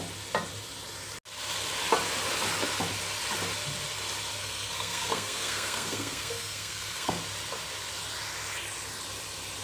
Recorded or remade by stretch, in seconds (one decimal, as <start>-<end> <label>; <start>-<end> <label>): 0.0-4.4 recorded; 4.4-7.2 remade; 7.2-9.6 recorded